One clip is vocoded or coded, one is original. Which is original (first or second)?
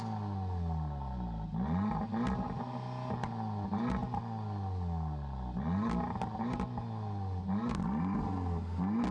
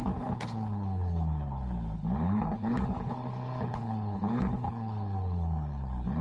first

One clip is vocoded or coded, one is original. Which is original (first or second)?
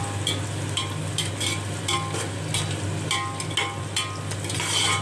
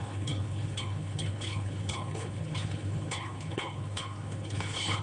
first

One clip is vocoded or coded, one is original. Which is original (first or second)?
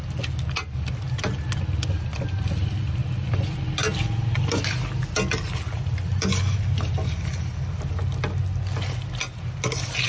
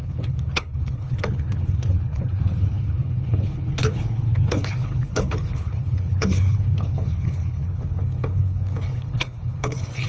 first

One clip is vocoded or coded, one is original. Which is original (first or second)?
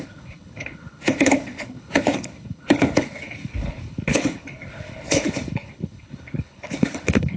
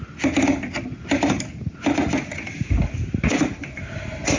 second